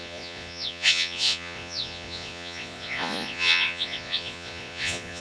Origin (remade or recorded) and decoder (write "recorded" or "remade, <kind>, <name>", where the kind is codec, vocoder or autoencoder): remade, vocoder, Vocos